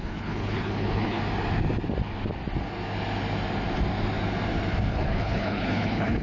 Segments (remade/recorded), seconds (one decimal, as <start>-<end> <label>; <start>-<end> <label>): 0.0-1.2 remade; 1.2-4.9 recorded; 4.9-6.2 remade